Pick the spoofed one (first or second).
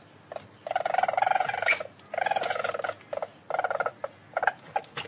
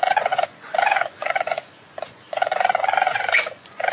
second